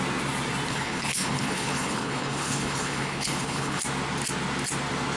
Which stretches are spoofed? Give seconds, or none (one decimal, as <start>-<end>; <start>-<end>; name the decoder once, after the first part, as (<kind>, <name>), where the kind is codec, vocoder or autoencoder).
0.7-3.8 (codec, HILCodec)